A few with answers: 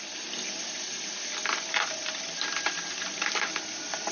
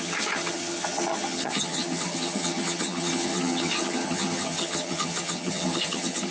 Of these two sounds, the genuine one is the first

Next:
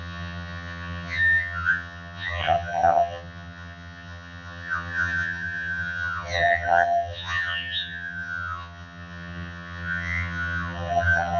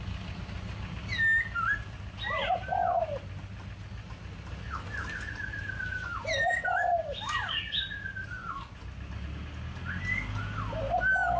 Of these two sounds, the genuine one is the second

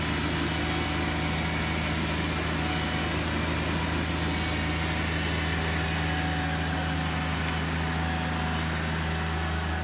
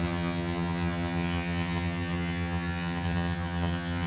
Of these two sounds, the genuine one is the first